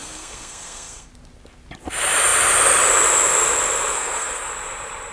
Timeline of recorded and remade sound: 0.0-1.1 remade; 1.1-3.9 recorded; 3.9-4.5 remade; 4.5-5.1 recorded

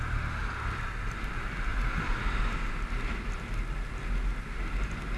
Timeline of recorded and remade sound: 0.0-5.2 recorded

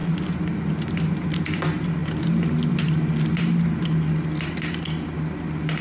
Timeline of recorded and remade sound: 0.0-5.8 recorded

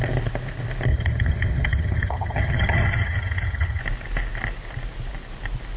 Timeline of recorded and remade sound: 0.0-0.9 recorded; 0.9-3.8 remade; 3.8-5.8 recorded